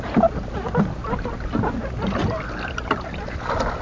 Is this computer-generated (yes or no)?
no